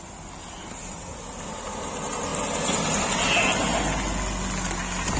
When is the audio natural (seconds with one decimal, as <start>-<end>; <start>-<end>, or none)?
0.0-5.2